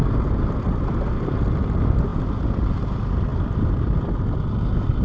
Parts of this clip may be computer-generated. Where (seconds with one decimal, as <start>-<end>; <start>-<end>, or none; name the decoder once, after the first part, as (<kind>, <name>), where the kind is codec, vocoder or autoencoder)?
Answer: none